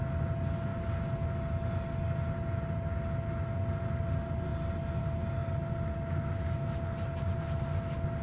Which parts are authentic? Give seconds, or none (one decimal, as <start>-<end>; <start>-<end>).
0.0-8.2